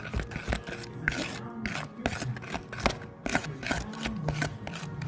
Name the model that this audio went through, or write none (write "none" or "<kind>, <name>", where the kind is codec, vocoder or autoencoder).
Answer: none